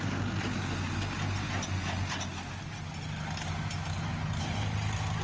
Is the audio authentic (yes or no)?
yes